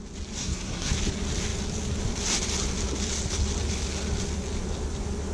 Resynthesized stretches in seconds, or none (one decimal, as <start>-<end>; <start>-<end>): 0.4-0.9